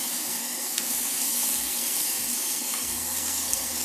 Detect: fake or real fake